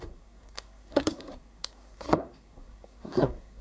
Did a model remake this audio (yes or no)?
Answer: yes